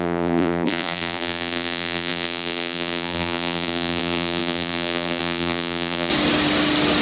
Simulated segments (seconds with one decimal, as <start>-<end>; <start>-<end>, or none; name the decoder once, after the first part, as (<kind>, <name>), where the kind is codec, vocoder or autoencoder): 0.0-6.1 (vocoder, BigVGAN v2)